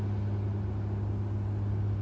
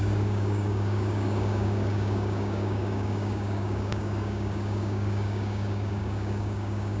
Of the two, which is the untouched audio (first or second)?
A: first